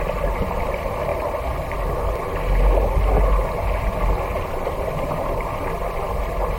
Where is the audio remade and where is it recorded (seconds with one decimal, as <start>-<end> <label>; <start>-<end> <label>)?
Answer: 0.0-6.6 recorded